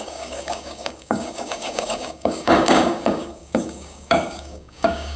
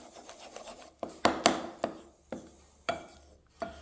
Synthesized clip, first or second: first